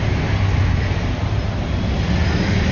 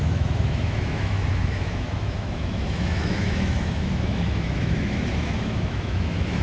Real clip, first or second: first